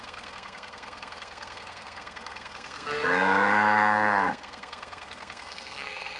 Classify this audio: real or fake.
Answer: fake